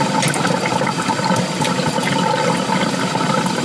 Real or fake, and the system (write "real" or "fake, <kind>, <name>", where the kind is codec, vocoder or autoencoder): real